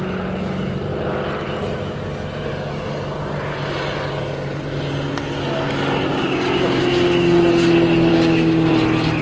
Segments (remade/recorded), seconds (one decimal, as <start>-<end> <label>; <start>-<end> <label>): 0.0-6.1 recorded; 6.1-6.8 remade; 6.8-8.1 recorded; 8.1-8.7 remade; 8.7-9.2 recorded